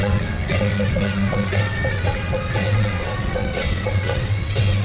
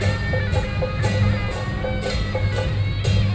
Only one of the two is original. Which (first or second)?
second